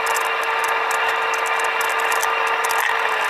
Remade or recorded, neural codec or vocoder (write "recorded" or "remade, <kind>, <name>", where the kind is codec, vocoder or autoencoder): recorded